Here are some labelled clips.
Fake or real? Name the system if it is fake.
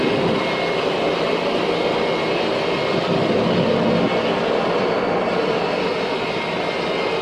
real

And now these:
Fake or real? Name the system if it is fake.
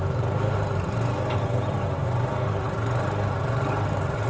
fake, vocoder, BigVGAN v2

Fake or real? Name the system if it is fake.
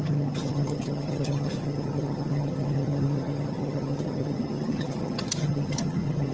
fake, vocoder, HiFi-GAN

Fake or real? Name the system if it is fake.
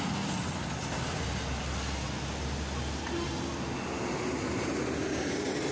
real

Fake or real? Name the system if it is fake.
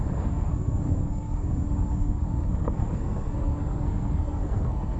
fake, codec, SNAC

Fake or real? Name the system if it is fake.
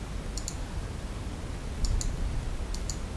real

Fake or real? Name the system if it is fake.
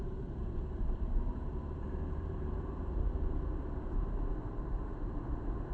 fake, vocoder, BigVGAN v2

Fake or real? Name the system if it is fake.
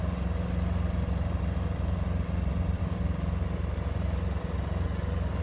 real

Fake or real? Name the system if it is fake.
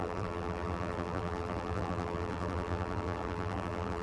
fake, vocoder, BigVGAN v2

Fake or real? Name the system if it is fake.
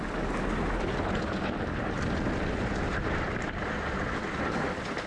real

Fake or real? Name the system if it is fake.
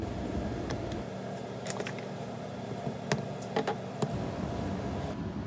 real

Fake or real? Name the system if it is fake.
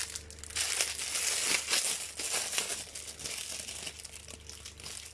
real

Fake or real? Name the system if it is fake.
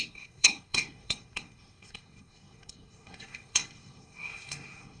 fake, codec, SNAC